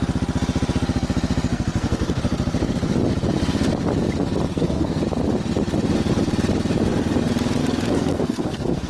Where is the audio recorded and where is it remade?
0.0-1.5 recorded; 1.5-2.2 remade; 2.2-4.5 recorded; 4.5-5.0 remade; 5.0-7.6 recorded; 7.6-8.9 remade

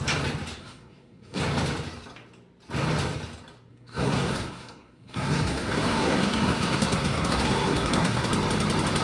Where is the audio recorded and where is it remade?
0.0-0.6 recorded; 0.6-1.4 remade; 1.4-3.7 recorded; 3.7-8.3 remade; 8.3-9.0 recorded

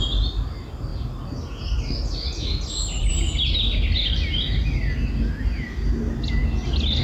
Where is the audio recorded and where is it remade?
0.0-7.0 recorded